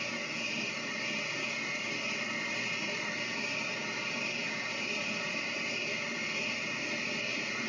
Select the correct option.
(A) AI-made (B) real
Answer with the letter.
B